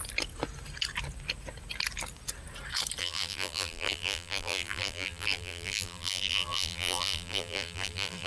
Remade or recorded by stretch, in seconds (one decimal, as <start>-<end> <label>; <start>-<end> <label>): 0.0-3.0 recorded; 3.0-8.3 remade